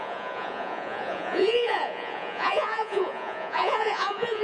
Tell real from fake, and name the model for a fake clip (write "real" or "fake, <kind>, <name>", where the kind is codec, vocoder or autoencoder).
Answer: fake, vocoder, Vocos